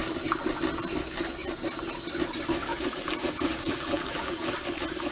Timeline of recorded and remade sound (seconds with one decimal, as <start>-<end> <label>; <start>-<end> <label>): 0.0-2.7 recorded; 2.7-4.5 remade; 4.5-5.1 recorded